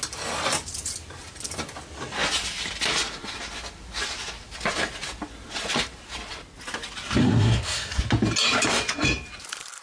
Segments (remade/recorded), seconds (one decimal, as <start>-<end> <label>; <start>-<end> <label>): 0.0-7.2 recorded; 7.2-8.0 remade; 8.0-9.8 recorded